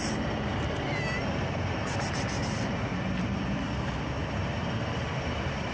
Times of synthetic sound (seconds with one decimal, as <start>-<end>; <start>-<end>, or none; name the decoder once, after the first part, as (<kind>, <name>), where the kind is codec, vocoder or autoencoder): 2.4-4.0 (vocoder, BigVGAN v2)